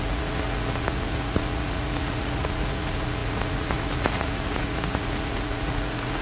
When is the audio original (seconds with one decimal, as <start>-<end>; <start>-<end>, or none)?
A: none